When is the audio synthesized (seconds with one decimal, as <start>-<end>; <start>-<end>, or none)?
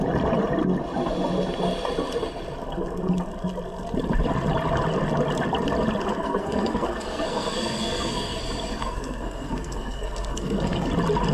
6.1-8.4; 8.8-10.9